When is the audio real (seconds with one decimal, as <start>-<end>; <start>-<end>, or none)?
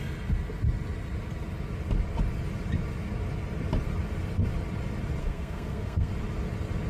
0.0-5.2; 6.1-6.9